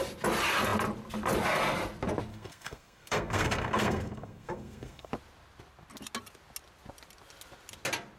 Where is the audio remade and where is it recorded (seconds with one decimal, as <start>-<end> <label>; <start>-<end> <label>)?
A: 0.0-2.3 recorded; 2.3-5.1 remade; 5.1-8.2 recorded